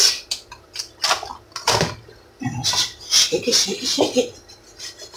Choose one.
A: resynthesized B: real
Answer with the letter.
B